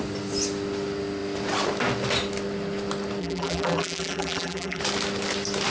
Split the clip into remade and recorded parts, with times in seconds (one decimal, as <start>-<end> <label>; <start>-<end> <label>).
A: 0.0-3.2 recorded; 3.2-4.8 remade; 4.8-5.7 recorded